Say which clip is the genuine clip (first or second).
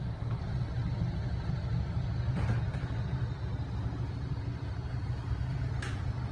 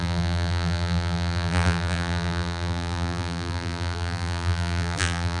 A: first